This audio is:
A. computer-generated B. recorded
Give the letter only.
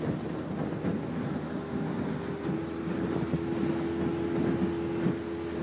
B